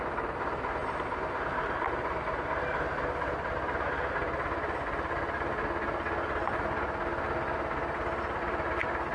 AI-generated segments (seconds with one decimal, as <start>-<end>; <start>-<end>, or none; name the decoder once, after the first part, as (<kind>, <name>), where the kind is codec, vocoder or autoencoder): none